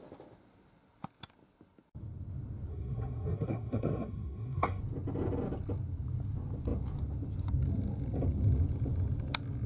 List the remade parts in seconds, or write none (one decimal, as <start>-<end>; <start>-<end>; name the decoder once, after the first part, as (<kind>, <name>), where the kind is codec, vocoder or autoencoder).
2.7-4.8 (codec, SNAC)